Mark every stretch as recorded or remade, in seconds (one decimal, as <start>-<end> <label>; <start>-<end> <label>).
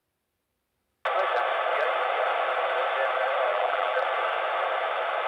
0.0-3.5 recorded; 3.5-4.0 remade; 4.0-5.3 recorded